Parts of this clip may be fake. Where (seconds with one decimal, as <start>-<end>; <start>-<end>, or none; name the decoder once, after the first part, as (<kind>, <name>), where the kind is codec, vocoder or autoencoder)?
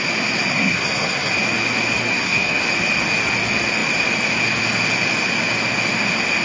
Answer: 0.5-1.3 (codec, SNAC); 2.0-2.6